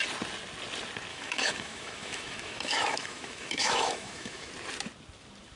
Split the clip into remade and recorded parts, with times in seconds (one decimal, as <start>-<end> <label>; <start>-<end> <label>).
0.0-1.1 recorded; 1.1-4.5 remade; 4.5-5.6 recorded